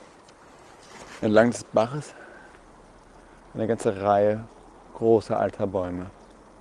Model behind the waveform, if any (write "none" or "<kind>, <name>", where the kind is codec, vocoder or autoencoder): none